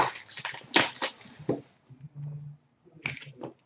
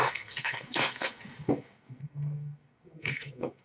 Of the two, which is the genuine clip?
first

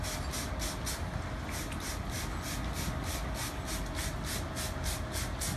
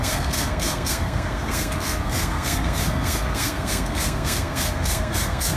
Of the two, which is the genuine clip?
first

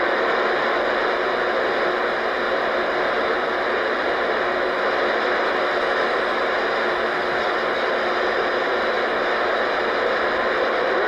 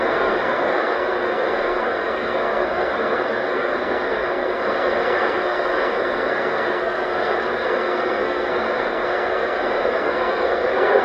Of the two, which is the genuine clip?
first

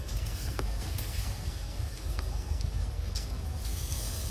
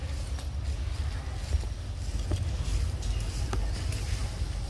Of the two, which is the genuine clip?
second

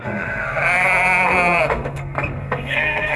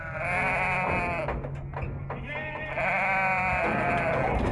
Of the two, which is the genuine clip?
second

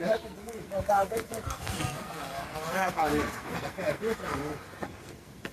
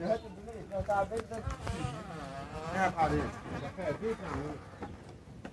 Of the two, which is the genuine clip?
second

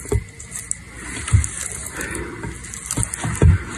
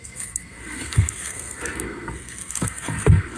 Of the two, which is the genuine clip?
first